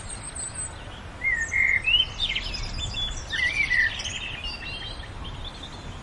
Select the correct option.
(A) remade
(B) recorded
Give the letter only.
B